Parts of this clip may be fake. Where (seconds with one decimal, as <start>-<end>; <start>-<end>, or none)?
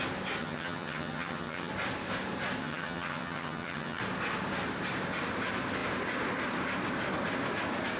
0.4-1.7; 2.6-4.0